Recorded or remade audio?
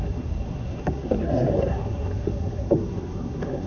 remade